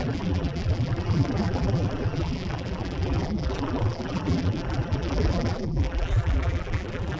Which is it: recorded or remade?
remade